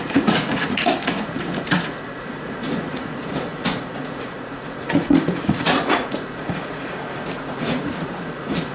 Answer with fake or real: fake